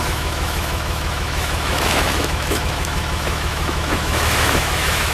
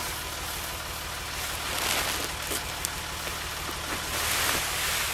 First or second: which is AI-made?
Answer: first